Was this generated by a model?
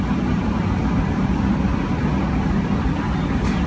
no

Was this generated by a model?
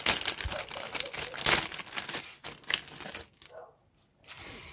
no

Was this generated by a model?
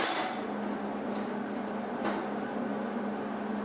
no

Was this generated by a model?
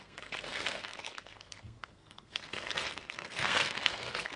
yes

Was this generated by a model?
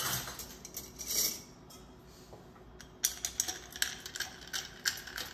no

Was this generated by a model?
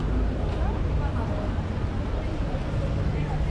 no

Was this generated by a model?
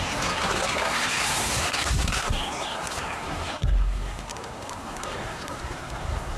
yes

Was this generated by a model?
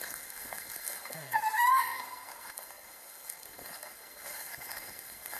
yes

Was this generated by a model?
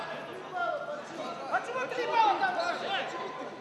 no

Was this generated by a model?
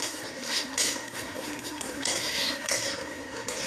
yes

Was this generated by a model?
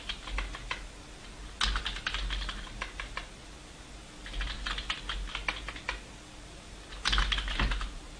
no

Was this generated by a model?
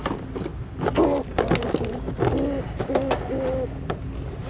no